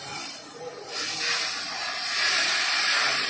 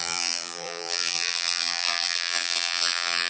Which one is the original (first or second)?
first